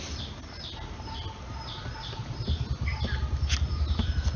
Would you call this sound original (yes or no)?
yes